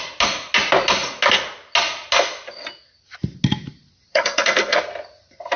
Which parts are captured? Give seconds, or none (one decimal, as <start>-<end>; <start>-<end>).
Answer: 0.0-4.1; 4.8-5.6